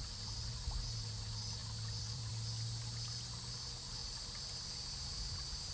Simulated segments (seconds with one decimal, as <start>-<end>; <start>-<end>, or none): 0.0-0.5; 1.6-2.3; 4.0-4.7